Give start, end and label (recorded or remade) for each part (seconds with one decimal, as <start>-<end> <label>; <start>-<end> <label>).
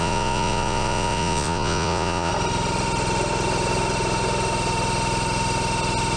0.0-2.3 remade; 2.3-6.2 recorded